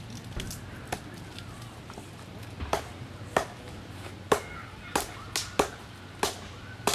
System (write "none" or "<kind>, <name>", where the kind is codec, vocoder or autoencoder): none